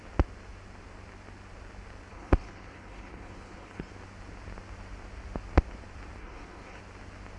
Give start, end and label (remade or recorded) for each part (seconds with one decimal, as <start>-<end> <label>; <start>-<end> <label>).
0.0-2.1 recorded; 2.1-3.9 remade; 3.9-6.2 recorded; 6.2-6.8 remade; 6.8-7.4 recorded